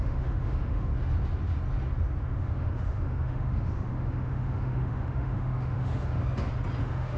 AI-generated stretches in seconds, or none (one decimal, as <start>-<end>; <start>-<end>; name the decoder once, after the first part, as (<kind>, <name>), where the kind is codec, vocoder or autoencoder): 0.0-0.9 (autoencoder, DAC-VAE); 2.2-6.2; 6.8-7.2